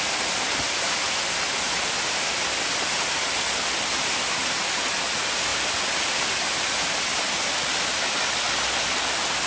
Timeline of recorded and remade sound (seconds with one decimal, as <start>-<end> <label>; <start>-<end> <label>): 0.0-9.5 recorded